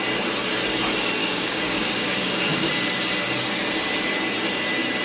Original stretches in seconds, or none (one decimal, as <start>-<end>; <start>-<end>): 0.0-1.2; 2.7-5.0